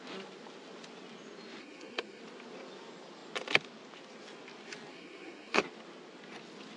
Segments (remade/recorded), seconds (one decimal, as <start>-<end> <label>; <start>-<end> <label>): 0.0-1.6 recorded; 1.6-2.2 remade; 2.2-4.9 recorded; 4.9-5.6 remade; 5.6-6.8 recorded